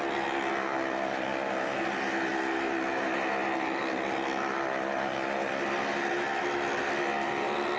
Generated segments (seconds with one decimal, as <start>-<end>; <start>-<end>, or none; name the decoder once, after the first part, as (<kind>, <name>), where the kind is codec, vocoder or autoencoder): none